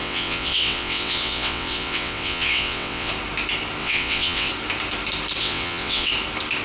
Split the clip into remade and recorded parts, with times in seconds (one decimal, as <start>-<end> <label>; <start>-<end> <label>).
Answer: 0.0-3.1 remade; 3.1-3.8 recorded; 3.8-4.5 remade; 4.5-5.4 recorded; 5.4-6.1 remade; 6.1-6.6 recorded